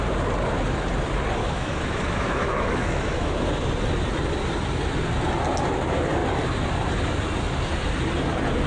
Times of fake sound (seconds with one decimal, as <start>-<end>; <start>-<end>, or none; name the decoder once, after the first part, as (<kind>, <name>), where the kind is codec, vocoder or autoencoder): 1.4-3.3 (autoencoder, DAC-VAE)